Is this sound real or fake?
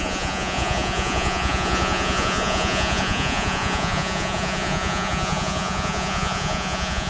fake